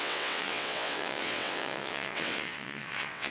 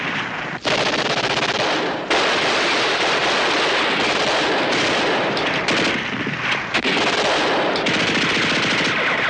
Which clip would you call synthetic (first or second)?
first